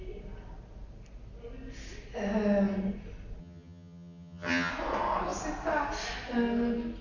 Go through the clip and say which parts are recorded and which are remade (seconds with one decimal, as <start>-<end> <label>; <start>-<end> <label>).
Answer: 0.0-3.4 recorded; 3.4-4.7 remade; 4.7-7.0 recorded